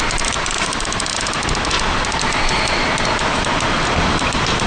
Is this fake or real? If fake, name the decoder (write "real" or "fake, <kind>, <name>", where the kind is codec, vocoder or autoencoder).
real